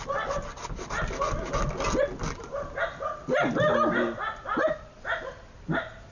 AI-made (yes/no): no